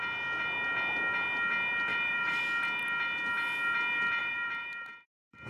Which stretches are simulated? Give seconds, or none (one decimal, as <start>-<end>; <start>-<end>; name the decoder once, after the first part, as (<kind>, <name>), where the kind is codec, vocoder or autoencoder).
1.9-2.4 (vocoder, BigVGAN v2); 4.2-5.5